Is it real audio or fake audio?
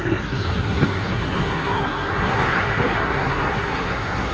fake